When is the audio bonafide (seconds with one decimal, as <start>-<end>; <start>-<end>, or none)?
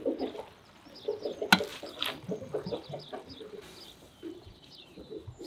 0.0-1.7; 5.0-5.5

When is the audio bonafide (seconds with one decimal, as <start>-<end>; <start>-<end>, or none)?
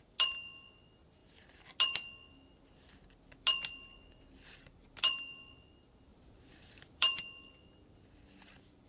0.0-6.1; 7.2-8.9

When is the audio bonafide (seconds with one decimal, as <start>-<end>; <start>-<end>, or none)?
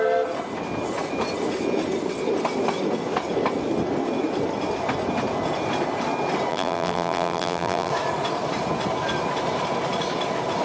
0.0-6.5; 7.9-10.6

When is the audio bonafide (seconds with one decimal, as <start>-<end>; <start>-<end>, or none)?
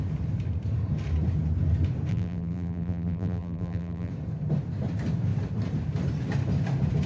0.0-2.1; 4.1-7.1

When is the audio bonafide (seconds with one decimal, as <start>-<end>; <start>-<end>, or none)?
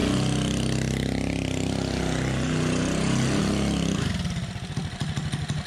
0.0-5.7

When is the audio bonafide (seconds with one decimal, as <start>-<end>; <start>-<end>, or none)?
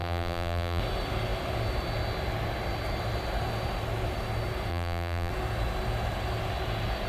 0.8-4.7; 5.3-7.1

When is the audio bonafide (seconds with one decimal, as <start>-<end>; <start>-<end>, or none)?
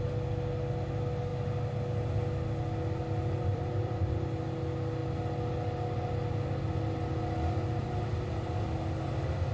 0.0-3.5; 4.1-9.5